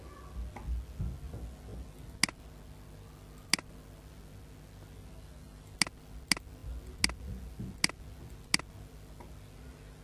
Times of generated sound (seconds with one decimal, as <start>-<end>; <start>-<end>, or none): none